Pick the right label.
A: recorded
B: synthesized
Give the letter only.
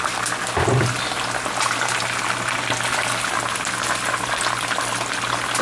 A